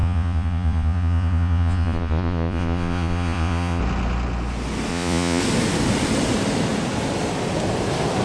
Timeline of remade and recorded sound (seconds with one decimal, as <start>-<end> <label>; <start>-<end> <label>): 0.0-3.8 remade; 3.8-4.9 recorded; 4.9-5.4 remade; 5.4-8.2 recorded